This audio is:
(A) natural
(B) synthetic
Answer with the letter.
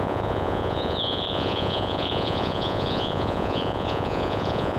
B